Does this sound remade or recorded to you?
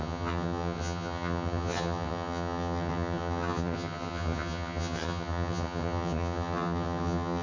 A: remade